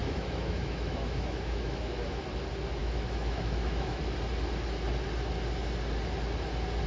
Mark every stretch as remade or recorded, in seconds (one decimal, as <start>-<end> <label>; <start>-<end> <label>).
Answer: 0.0-2.2 remade; 2.2-2.8 recorded; 2.8-4.0 remade; 4.0-6.9 recorded